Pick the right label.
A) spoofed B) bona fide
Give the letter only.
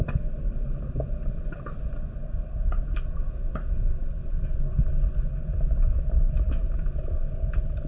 A